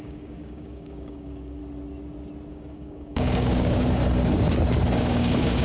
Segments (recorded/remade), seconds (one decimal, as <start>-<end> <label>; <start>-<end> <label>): 0.0-1.6 remade; 1.6-2.5 recorded; 2.5-4.0 remade; 4.0-5.0 recorded; 5.0-5.6 remade